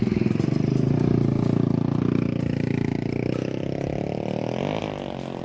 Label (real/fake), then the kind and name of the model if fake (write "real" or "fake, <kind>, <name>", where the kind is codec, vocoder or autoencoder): real